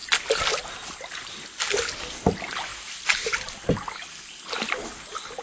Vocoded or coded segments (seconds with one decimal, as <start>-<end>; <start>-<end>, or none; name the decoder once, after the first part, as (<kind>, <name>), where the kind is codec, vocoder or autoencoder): none